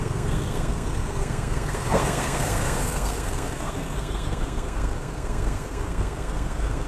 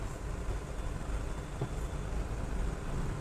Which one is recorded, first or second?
second